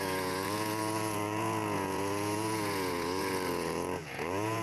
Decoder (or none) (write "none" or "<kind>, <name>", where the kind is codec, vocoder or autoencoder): vocoder, Vocos